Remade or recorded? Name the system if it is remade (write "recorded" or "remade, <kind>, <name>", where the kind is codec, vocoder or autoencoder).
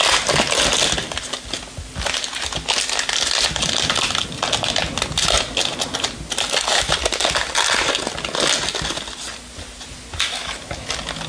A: recorded